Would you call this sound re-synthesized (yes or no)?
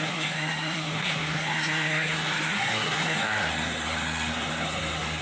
yes